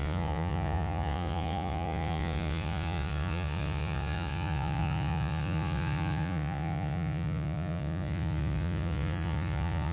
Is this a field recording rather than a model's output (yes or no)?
no